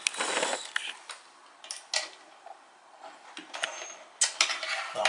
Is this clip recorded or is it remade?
recorded